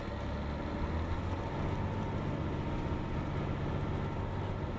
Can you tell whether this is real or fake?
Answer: real